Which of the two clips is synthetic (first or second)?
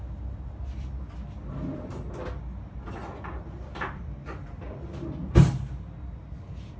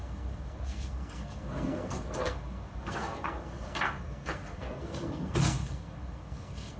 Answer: second